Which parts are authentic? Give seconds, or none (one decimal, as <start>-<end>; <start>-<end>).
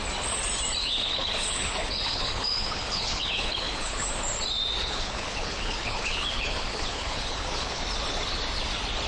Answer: 0.0-0.8; 4.1-4.8; 7.8-9.1